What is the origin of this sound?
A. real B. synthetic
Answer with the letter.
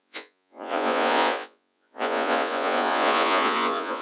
B